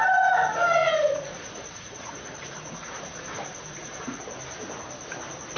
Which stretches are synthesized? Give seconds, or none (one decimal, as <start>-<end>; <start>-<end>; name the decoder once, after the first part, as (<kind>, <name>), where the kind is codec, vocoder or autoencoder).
0.8-4.2 (vocoder, Vocos)